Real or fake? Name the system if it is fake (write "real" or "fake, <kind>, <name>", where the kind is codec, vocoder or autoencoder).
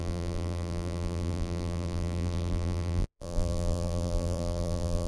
fake, vocoder, BigVGAN v2